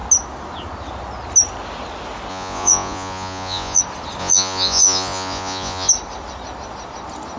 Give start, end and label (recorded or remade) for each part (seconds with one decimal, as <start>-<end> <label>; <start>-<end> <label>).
0.0-2.3 recorded; 2.3-3.8 remade; 3.8-4.2 recorded; 4.2-5.9 remade; 5.9-7.4 recorded